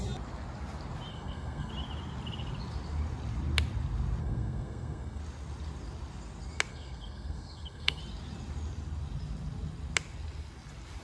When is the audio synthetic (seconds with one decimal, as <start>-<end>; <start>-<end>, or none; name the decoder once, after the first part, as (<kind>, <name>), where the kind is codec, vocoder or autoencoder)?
1.1-1.7 (codec, SNAC); 4.2-5.2; 6.7-8.0